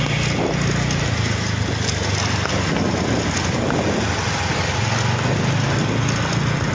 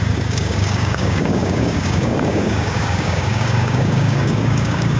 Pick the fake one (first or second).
second